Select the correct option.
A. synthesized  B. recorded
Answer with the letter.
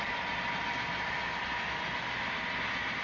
B